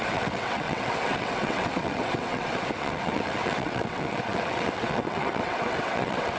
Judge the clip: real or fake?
fake